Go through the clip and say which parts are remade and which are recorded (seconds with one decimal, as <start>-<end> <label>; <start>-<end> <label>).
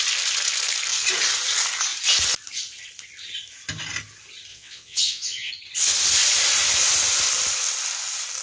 0.0-4.5 recorded; 4.5-5.5 remade; 5.5-8.4 recorded